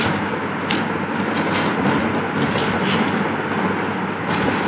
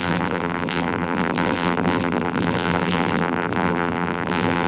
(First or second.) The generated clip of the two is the second